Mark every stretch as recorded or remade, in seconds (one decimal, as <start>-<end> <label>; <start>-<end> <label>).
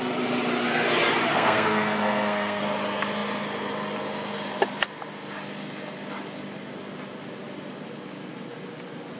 0.0-1.3 recorded; 1.3-2.6 remade; 2.6-9.2 recorded